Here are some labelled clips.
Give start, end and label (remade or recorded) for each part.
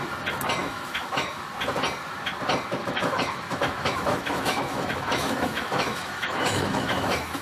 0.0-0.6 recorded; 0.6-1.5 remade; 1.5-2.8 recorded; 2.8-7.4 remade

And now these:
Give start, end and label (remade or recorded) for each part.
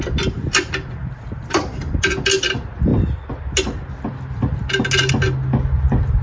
0.0-1.0 recorded; 1.0-1.8 remade; 1.8-6.2 recorded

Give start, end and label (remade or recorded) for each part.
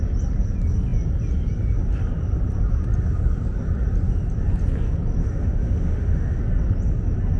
0.0-5.2 recorded; 5.2-6.4 remade; 6.4-7.4 recorded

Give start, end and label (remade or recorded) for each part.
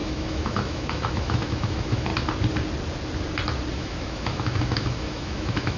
0.0-2.1 remade; 2.1-3.7 recorded; 3.7-5.8 remade